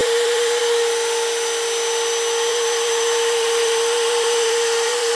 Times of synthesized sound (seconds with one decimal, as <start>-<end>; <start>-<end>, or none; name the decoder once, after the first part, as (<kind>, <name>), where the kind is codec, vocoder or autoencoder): 0.0-0.6 (vocoder, BigVGAN v2); 2.5-5.1